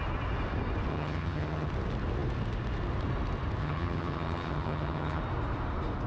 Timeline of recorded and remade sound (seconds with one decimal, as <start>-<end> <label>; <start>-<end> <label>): 0.0-0.9 recorded; 0.9-1.7 remade; 1.7-3.6 recorded; 3.6-5.2 remade; 5.2-6.1 recorded